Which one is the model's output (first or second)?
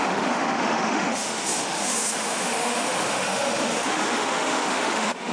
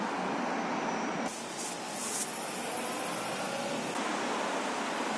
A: first